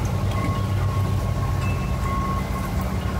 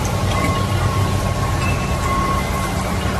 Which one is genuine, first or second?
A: first